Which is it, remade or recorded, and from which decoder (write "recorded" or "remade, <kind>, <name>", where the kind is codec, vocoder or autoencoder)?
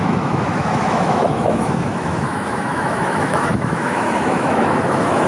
remade, autoencoder, DAC-VAE